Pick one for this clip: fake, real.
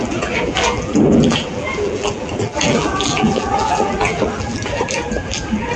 fake